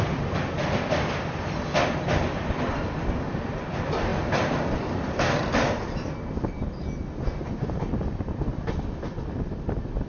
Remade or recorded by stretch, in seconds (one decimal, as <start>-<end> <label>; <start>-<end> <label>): 0.0-10.1 recorded

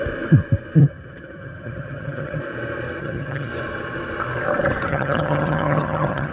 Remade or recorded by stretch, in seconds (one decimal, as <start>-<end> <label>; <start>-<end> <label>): 0.0-0.8 recorded; 0.8-2.4 remade; 2.4-3.0 recorded; 3.0-3.5 remade; 3.5-4.9 recorded; 4.9-6.3 remade